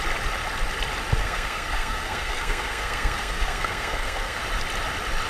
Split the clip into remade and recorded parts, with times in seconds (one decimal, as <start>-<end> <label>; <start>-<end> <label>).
0.0-1.2 recorded; 1.2-4.4 remade; 4.4-5.3 recorded

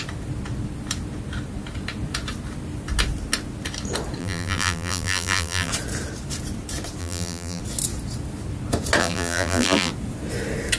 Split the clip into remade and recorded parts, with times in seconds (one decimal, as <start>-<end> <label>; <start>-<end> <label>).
0.0-4.2 recorded; 4.2-5.7 remade; 5.7-7.0 recorded; 7.0-7.6 remade; 7.6-9.0 recorded; 9.0-9.9 remade; 9.9-10.8 recorded